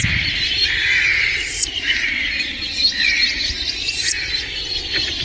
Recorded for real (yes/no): no